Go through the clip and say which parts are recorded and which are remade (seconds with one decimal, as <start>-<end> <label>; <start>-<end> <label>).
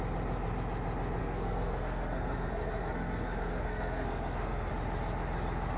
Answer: 0.0-1.2 recorded; 1.2-4.7 remade; 4.7-5.8 recorded